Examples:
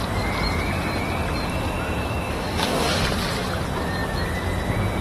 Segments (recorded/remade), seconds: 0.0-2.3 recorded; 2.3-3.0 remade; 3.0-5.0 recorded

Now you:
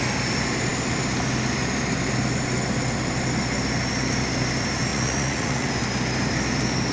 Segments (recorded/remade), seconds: 0.0-4.9 recorded; 4.9-5.7 remade; 5.7-6.9 recorded

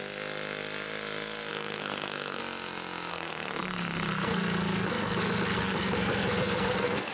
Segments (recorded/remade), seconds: 0.0-1.5 recorded; 1.5-2.4 remade; 2.4-3.1 recorded; 3.1-7.1 remade